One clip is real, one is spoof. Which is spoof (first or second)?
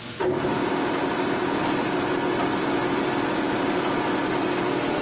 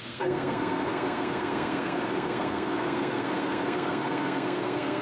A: second